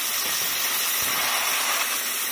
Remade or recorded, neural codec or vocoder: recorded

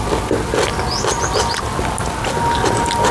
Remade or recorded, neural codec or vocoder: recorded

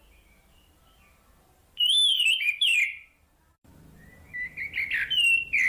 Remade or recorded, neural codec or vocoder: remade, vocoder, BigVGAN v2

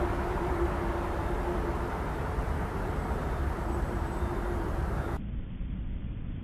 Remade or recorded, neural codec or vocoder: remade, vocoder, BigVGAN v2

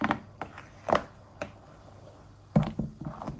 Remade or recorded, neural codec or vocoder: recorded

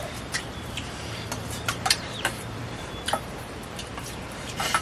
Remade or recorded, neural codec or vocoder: remade, vocoder, BigVGAN v2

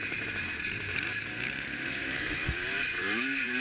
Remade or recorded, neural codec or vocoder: remade, vocoder, BigVGAN v2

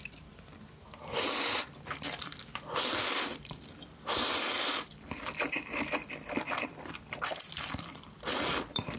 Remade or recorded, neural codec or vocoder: remade, vocoder, BigVGAN v2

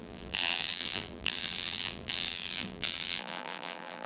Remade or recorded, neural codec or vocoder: remade, vocoder, BigVGAN v2